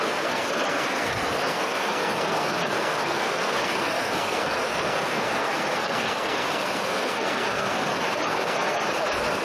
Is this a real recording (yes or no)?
no